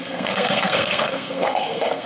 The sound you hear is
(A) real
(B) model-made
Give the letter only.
B